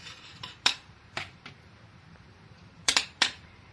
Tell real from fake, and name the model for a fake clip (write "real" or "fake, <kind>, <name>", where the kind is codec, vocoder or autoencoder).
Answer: fake, vocoder, BigVGAN v2